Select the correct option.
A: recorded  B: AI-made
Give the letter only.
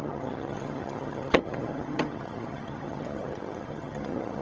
B